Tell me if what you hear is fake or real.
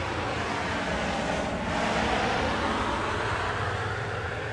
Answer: real